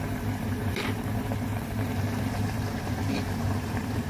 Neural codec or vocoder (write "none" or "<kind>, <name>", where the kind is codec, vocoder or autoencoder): vocoder, BigVGAN v2